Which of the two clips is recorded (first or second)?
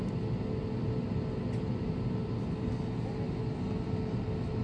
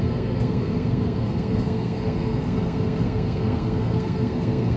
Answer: first